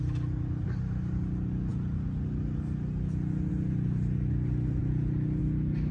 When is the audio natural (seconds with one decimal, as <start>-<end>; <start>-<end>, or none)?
0.0-5.9